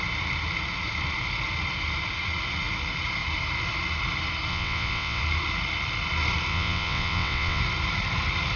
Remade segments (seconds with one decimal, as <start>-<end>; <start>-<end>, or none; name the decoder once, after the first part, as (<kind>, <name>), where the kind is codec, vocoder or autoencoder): 4.5-5.2 (vocoder, WaveNeXt); 6.5-7.6